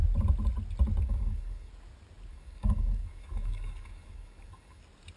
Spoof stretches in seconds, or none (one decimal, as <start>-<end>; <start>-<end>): 1.0-1.7; 2.3-4.8

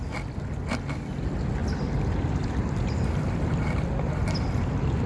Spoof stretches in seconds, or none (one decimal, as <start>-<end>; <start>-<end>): none

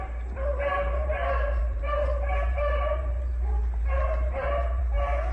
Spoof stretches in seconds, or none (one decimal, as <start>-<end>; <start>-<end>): 0.0-5.3

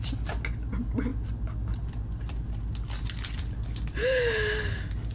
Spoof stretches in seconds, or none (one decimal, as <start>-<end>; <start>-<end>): 4.0-4.6

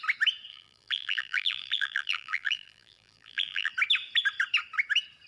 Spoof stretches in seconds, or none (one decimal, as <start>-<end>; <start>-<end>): 0.5-3.7